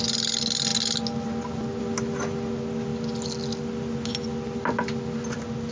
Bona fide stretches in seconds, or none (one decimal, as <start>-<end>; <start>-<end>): 0.0-5.7